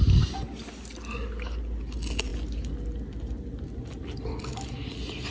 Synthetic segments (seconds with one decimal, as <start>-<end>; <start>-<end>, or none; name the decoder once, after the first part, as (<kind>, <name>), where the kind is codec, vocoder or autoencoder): none